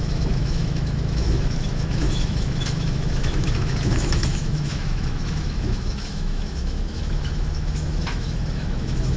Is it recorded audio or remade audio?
remade